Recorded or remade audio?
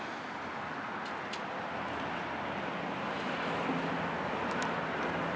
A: recorded